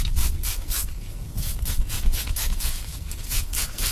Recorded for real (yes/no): no